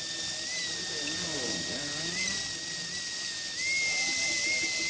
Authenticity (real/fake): real